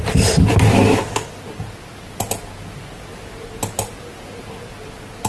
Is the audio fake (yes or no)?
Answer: no